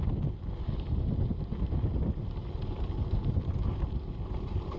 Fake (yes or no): no